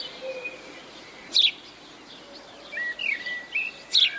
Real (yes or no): yes